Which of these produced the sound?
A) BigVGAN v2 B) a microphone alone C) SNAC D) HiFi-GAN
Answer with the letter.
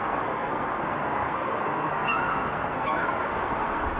C